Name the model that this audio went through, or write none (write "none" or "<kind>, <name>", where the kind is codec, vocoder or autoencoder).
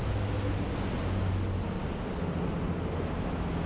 none